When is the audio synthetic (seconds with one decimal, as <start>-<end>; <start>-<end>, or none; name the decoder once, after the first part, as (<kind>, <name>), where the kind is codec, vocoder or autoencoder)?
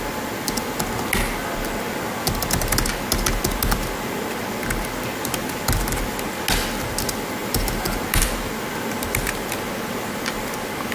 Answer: 7.4-8.2 (vocoder, BigVGAN v2)